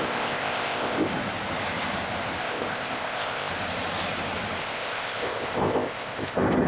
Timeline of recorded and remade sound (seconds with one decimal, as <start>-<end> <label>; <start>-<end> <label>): 0.0-1.1 remade; 1.1-2.4 recorded; 2.4-3.5 remade; 3.5-4.6 recorded; 4.6-6.7 remade